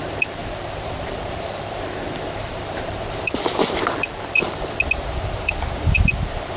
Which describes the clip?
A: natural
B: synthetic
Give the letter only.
B